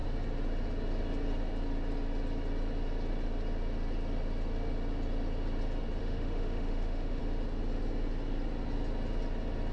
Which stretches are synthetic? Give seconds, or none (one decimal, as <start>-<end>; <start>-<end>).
6.0-7.2